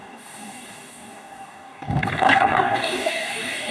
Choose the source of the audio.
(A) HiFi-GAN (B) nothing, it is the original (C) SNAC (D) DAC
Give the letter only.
D